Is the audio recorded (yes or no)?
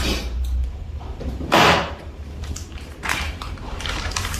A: no